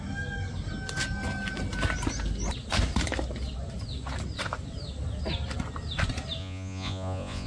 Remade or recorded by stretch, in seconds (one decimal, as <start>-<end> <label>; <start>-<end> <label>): 0.0-6.4 recorded; 6.4-7.5 remade